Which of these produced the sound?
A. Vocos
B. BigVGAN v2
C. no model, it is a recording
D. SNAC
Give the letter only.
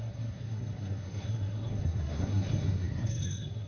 D